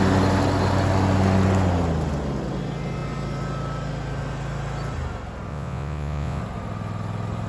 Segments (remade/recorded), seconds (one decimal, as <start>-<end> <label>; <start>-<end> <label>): 0.0-5.5 recorded; 5.5-6.4 remade; 6.4-7.5 recorded